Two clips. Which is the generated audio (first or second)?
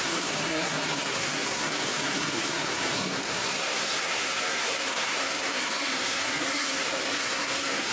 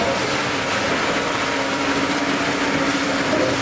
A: first